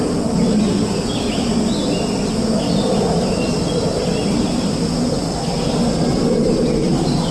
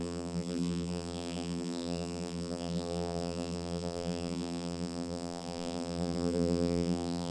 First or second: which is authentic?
first